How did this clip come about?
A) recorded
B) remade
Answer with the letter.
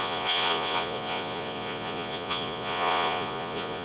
B